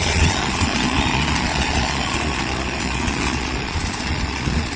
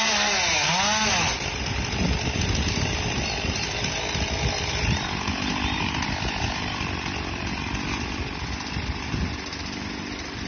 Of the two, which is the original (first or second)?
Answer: second